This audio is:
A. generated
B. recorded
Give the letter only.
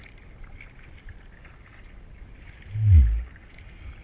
B